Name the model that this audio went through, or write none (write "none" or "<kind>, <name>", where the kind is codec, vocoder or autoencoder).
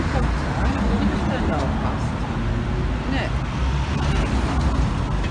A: none